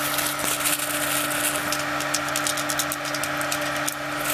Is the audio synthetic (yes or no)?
no